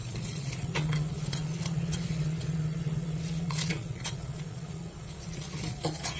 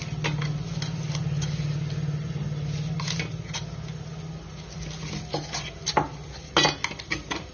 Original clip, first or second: second